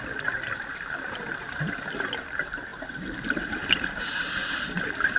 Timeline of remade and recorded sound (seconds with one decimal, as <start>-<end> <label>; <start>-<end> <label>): 0.0-5.2 recorded